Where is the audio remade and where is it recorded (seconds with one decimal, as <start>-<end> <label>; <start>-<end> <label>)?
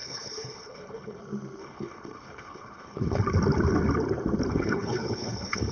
0.0-1.2 remade; 1.2-1.6 recorded; 1.6-3.2 remade; 3.2-4.5 recorded; 4.5-5.7 remade